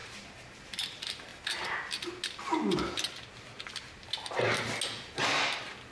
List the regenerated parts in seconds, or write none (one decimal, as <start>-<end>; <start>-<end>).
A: 0.0-0.8